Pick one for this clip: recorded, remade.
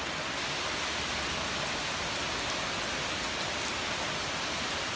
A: recorded